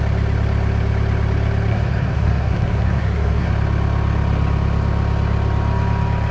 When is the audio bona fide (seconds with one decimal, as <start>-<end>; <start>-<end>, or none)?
0.0-1.7; 3.5-6.3